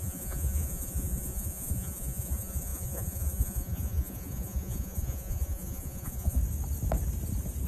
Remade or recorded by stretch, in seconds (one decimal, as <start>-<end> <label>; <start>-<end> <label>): 0.0-6.4 remade; 6.4-7.7 recorded

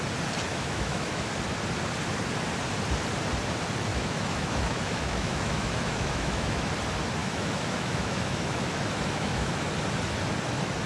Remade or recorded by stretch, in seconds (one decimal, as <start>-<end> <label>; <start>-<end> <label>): 0.0-0.5 recorded; 0.5-1.3 remade; 1.3-3.9 recorded; 3.9-6.7 remade; 6.7-7.2 recorded; 7.2-9.7 remade; 9.7-10.9 recorded

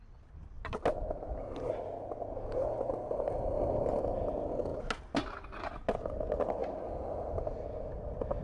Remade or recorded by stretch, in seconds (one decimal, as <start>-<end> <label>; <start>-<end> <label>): 0.0-8.4 recorded